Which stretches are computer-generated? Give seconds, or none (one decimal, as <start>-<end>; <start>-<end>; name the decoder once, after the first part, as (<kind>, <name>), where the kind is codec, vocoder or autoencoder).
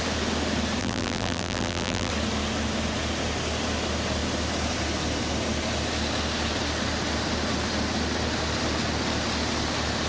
0.8-2.1 (vocoder, BigVGAN v2)